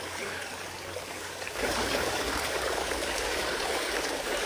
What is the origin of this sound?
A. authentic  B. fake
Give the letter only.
B